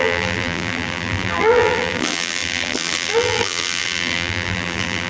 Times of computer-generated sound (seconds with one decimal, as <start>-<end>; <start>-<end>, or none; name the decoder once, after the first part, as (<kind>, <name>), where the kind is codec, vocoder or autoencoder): 0.0-5.1 (vocoder, BigVGAN v2)